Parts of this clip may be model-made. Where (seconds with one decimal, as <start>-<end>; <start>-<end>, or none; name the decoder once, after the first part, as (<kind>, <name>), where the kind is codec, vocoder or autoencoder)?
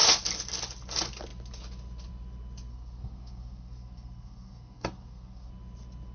2.7-5.5 (codec, SNAC)